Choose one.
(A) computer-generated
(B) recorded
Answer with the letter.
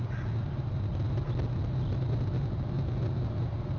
B